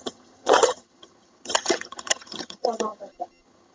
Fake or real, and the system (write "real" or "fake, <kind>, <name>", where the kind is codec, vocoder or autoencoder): fake, vocoder, HiFi-GAN